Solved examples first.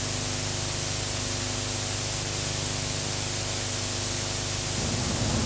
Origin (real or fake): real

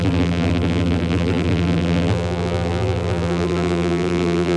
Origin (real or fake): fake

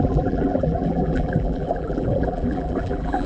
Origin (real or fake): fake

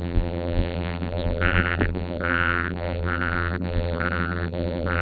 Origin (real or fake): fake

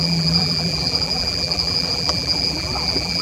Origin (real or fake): fake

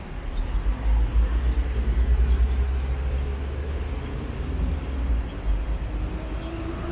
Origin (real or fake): real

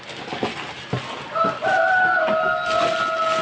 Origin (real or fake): real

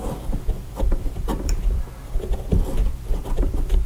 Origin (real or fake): fake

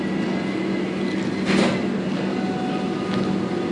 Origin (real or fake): real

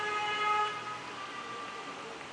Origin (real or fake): real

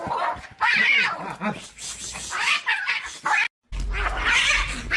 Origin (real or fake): real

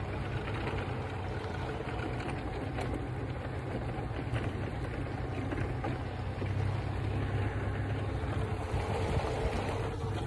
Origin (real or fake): real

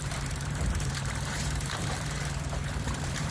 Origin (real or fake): fake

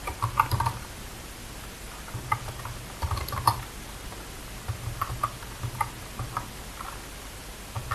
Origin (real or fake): real